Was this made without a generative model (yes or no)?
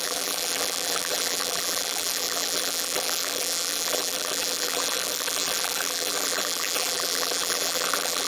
no